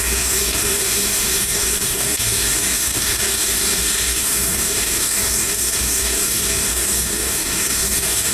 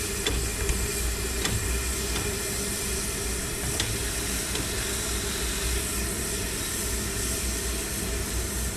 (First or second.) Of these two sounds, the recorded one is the second